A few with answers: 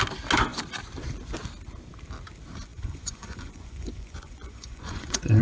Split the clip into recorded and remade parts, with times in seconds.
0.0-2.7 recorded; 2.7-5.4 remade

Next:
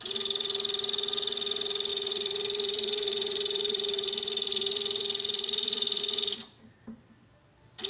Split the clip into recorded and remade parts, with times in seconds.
0.0-1.9 recorded; 1.9-6.0 remade; 6.0-7.9 recorded

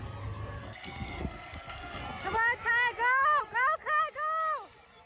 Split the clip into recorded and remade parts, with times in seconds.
0.0-0.6 recorded; 0.6-2.0 remade; 2.0-5.1 recorded

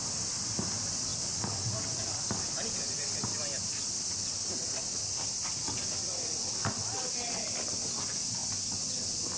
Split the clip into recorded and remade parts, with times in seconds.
0.0-9.4 recorded

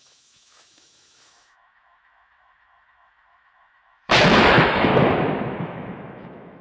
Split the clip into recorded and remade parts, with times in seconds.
0.0-4.9 remade; 4.9-5.6 recorded; 5.6-6.6 remade

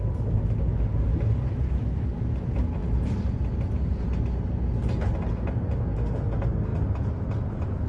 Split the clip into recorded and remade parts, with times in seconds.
0.0-7.9 recorded

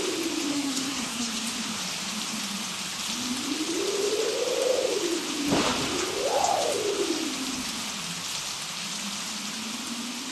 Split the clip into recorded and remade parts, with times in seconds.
0.0-0.5 recorded; 0.5-1.3 remade; 1.3-10.3 recorded